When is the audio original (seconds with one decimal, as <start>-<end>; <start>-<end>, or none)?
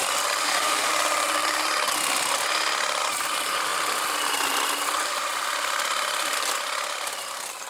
0.0-0.4; 0.9-7.7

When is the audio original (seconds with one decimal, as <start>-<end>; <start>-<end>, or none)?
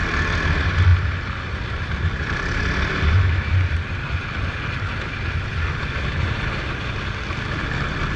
0.0-8.2